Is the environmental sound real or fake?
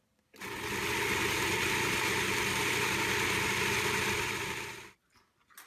real